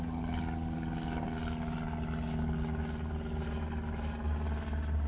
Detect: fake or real real